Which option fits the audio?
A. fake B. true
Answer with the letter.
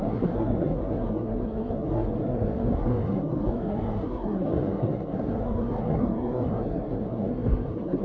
A